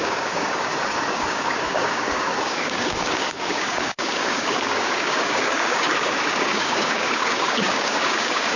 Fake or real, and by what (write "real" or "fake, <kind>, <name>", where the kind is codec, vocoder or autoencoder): fake, codec, DAC